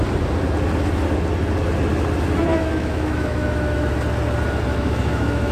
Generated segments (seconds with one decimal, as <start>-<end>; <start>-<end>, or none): 2.5-3.9; 4.7-5.5